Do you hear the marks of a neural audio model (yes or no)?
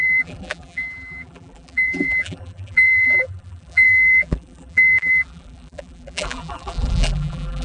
yes